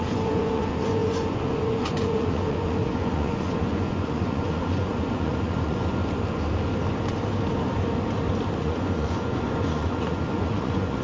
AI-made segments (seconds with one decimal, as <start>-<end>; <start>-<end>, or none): 0.0-6.0; 8.6-11.0